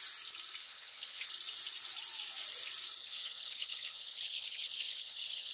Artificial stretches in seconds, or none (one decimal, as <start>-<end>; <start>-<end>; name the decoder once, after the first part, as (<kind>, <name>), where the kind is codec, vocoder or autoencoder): 0.6-1.3 (codec, HILCodec); 3.0-5.5